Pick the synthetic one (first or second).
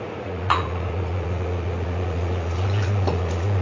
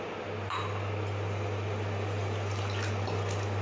first